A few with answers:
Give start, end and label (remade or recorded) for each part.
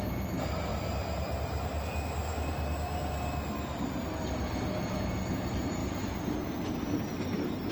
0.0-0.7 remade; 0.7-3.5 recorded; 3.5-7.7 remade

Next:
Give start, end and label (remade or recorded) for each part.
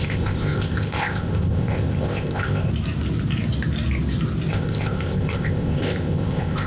0.0-2.7 remade; 2.7-4.5 recorded; 4.5-6.7 remade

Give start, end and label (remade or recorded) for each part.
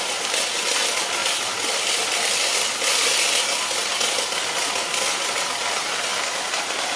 0.0-7.0 recorded